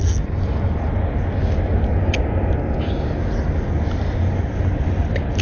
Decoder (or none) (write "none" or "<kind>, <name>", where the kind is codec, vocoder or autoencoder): none